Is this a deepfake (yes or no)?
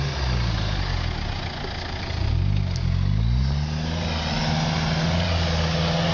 no